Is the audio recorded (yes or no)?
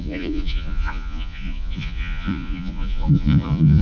no